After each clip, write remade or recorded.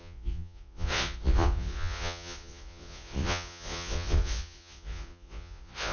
remade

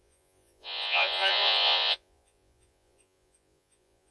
remade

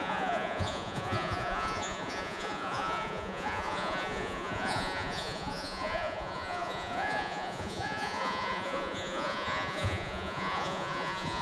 remade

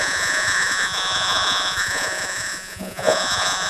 remade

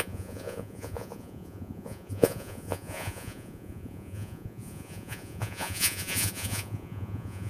remade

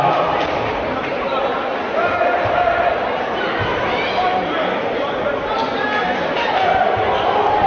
recorded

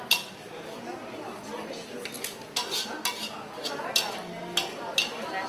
recorded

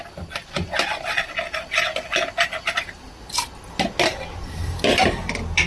recorded